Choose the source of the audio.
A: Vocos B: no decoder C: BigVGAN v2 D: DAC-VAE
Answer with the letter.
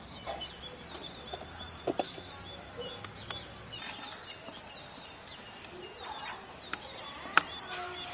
B